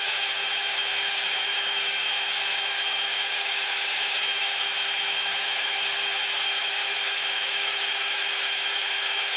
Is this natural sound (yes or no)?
no